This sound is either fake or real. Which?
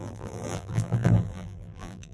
fake